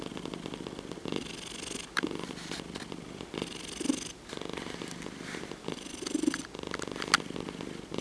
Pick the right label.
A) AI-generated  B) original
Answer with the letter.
B